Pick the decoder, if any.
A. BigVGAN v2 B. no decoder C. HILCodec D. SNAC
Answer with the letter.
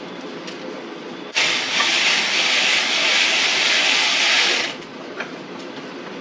A